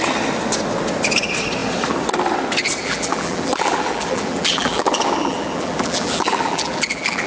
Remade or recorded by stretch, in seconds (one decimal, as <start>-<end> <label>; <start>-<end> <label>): 0.0-2.8 recorded; 2.8-7.3 remade